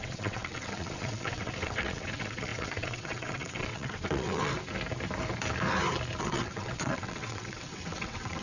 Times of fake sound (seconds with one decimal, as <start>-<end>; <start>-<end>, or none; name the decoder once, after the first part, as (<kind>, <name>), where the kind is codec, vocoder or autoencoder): 0.0-4.5 (vocoder, WaveNeXt); 6.2-8.4